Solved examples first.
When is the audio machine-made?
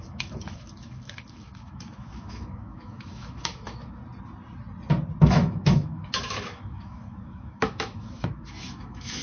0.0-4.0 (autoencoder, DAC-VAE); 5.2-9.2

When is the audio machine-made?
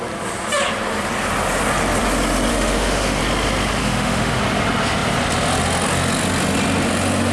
2.5-3.2 (autoencoder, DAC-VAE); 3.8-4.4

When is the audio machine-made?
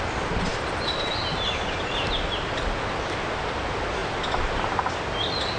none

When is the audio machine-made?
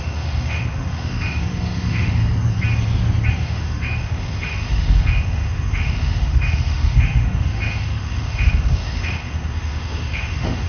0.0-2.2 (autoencoder, DAC-VAE); 3.3-10.7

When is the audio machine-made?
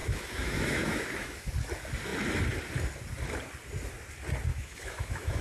0.0-1.5 (autoencoder, DAC-VAE); 4.5-5.4